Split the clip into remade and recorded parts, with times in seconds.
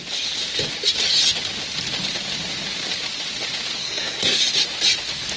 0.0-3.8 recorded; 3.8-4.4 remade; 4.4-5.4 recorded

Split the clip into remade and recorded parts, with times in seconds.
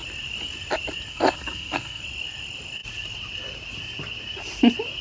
0.0-1.1 recorded; 1.1-2.0 remade; 2.0-5.0 recorded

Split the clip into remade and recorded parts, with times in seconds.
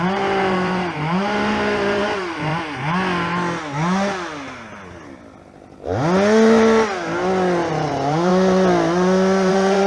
0.0-2.5 remade; 2.5-7.7 recorded; 7.7-8.3 remade; 8.3-9.5 recorded; 9.5-9.9 remade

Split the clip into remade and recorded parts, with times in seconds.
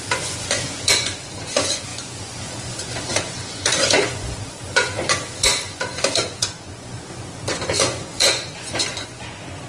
0.0-9.7 remade